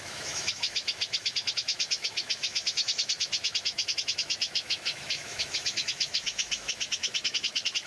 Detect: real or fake fake